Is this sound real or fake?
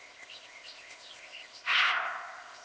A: fake